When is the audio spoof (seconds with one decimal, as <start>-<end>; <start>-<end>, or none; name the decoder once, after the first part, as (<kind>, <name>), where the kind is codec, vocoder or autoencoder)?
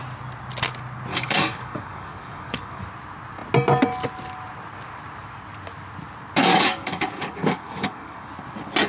1.1-2.9 (codec, DAC); 6.5-8.3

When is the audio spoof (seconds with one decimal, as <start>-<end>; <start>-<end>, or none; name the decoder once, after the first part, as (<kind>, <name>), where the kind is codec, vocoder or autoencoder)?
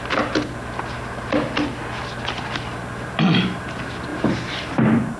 none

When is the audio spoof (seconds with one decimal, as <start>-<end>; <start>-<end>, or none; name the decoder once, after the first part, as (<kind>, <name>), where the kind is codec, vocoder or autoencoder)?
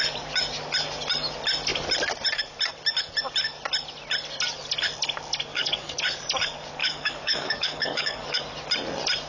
5.5-6.0 (codec, DAC); 6.8-8.4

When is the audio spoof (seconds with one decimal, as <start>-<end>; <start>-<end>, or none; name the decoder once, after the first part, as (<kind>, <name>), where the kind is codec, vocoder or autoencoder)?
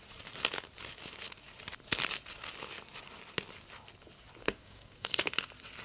4.4-5.3 (codec, DAC)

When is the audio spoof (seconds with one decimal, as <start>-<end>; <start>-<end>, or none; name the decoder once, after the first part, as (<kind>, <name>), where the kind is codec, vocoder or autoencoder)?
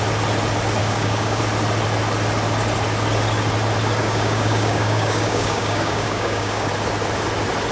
0.8-1.4 (codec, DAC); 4.0-6.7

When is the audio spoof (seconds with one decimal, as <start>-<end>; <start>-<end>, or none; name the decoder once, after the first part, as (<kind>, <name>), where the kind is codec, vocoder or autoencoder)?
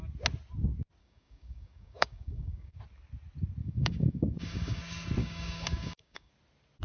1.0-2.8 (codec, DAC); 3.6-4.8; 5.2-6.3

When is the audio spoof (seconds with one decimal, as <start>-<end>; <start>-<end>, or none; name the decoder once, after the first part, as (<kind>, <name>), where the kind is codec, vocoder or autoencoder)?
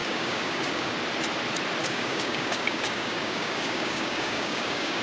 0.0-0.9 (codec, DAC); 1.8-5.0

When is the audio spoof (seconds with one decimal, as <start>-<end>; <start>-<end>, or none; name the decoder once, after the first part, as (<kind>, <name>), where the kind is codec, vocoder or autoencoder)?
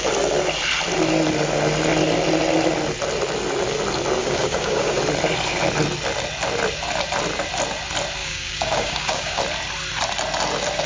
4.2-5.0 (codec, DAC); 8.2-9.4